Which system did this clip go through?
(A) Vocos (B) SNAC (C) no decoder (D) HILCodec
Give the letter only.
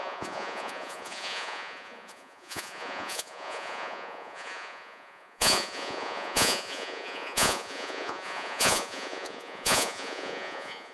A